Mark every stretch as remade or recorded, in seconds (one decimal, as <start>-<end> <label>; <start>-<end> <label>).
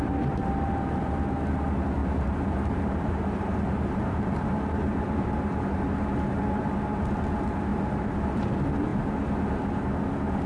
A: 0.0-2.0 recorded; 2.0-6.4 remade; 6.4-7.7 recorded; 7.7-8.5 remade; 8.5-10.5 recorded